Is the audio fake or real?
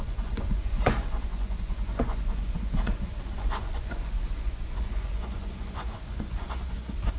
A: fake